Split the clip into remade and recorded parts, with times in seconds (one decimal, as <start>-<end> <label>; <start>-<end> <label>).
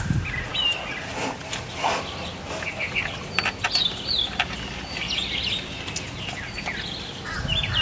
0.0-7.8 recorded